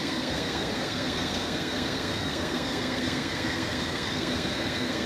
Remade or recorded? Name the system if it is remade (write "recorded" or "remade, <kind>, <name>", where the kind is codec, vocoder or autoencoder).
remade, codec, SNAC